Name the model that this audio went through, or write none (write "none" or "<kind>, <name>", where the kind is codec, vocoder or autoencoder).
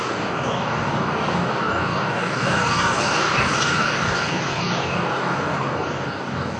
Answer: codec, DAC